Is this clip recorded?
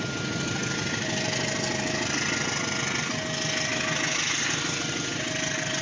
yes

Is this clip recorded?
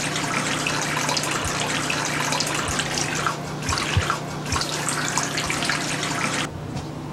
yes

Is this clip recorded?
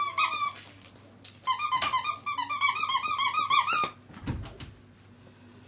yes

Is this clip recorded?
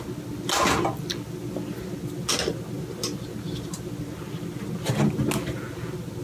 yes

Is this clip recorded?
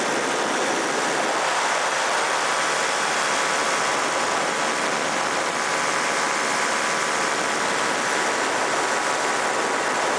yes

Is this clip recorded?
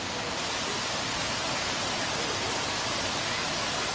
yes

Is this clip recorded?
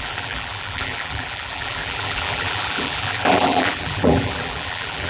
no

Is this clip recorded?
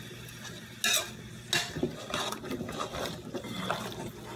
yes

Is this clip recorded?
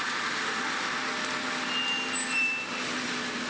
yes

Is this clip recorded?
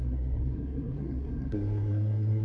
no